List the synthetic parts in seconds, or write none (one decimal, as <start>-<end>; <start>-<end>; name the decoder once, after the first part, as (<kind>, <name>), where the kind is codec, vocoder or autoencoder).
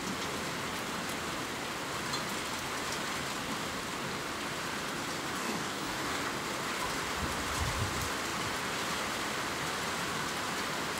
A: 5.4-6.2 (codec, DAC)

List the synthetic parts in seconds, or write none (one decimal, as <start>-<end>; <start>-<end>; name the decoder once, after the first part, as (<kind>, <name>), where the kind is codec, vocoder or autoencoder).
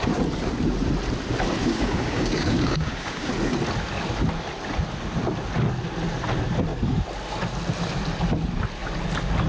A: 1.6-3.3 (codec, DAC)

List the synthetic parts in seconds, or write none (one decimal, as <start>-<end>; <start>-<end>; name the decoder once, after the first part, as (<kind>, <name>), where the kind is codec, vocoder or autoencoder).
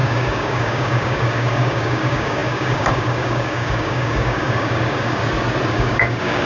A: 0.0-5.2 (codec, DAC); 5.7-6.5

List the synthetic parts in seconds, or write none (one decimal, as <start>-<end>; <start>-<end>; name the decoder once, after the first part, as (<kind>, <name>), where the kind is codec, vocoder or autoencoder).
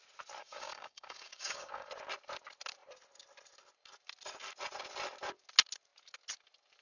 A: 0.4-1.9 (codec, DAC)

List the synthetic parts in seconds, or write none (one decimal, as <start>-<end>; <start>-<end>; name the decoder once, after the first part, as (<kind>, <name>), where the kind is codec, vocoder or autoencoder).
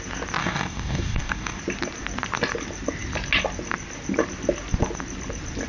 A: 0.4-1.6 (codec, DAC)